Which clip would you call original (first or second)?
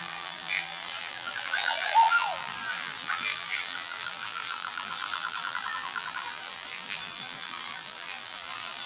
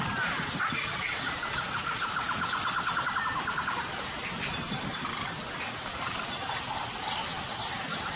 second